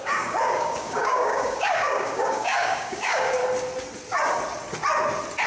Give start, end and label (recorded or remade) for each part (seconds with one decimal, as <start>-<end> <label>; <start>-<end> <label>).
0.0-3.4 remade; 3.4-5.5 recorded